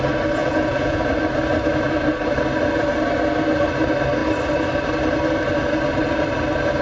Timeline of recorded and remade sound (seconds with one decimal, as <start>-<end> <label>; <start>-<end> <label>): 0.0-0.4 recorded; 0.4-1.0 remade; 1.0-6.8 recorded

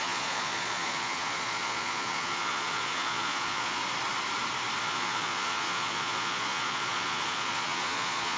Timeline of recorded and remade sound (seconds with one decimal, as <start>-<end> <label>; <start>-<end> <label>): 0.0-3.8 remade; 3.8-4.8 recorded; 4.8-8.4 remade

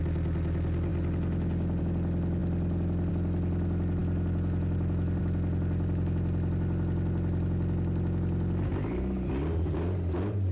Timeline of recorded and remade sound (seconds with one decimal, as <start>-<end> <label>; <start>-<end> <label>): 0.0-10.5 recorded

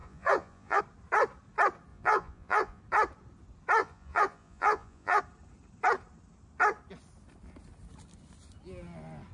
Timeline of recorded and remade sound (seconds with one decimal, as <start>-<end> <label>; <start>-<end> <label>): 0.0-0.8 remade; 0.8-1.9 recorded; 1.9-2.8 remade; 2.8-3.8 recorded; 3.8-5.2 remade; 5.2-9.3 recorded

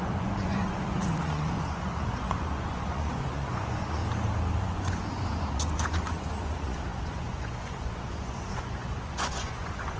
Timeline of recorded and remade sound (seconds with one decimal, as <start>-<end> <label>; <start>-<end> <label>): 0.0-4.0 remade; 4.0-4.6 recorded; 4.6-10.0 remade

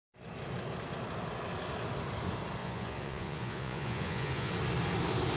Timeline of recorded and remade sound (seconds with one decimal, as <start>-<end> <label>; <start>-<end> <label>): 0.0-2.6 recorded; 2.6-4.5 remade; 4.5-5.4 recorded

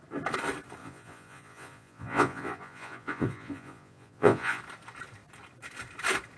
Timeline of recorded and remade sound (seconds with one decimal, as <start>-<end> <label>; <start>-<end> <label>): 0.0-0.8 recorded; 0.8-4.6 remade; 4.6-6.4 recorded